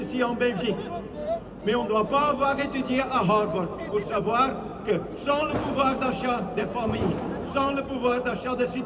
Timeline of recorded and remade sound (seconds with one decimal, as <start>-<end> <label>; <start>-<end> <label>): 0.0-1.2 recorded; 1.2-3.3 remade; 3.3-3.7 recorded; 3.7-4.2 remade; 4.2-4.7 recorded; 4.7-8.9 remade